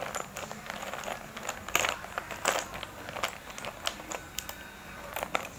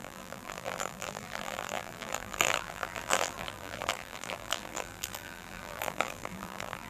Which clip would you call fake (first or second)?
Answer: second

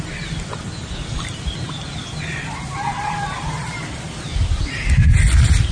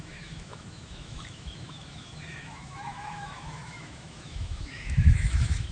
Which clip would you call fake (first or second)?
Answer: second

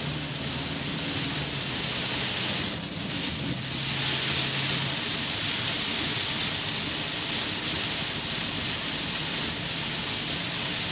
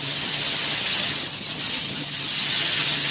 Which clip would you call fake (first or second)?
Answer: second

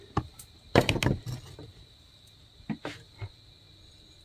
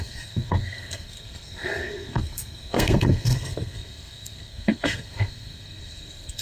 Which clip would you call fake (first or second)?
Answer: second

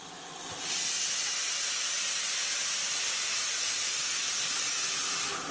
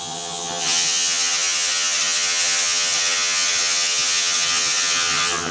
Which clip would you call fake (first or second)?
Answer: second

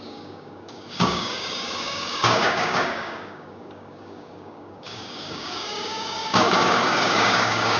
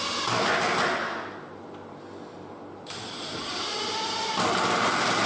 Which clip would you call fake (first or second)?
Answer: first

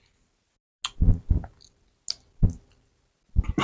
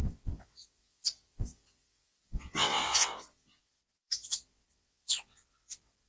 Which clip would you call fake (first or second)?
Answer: second